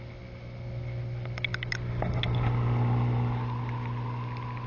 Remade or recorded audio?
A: recorded